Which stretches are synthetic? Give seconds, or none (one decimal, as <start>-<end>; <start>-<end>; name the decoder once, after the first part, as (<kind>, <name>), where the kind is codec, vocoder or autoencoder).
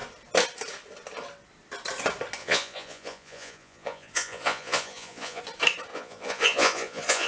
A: 2.4-5.4 (vocoder, Vocos); 5.9-7.3